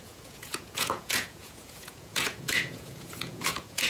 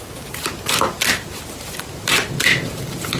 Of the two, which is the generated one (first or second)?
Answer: first